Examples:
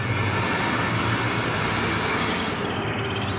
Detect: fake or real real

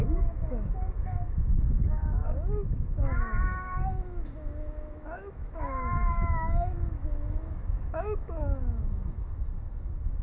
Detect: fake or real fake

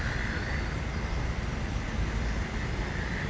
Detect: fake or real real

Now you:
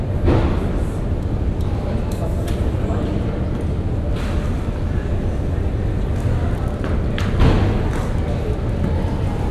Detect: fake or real real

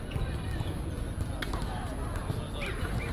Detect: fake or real real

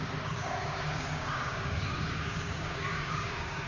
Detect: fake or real fake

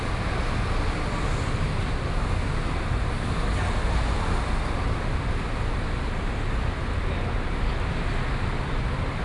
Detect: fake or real real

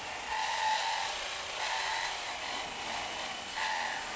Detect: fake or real real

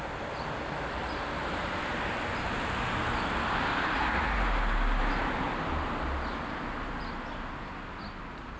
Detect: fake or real real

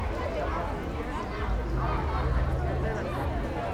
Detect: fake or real real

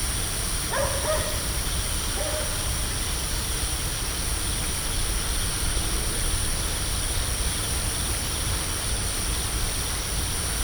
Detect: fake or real real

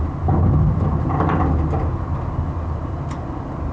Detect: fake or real real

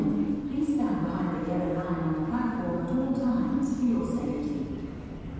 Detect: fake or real real